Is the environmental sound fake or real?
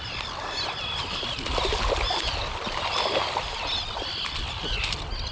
real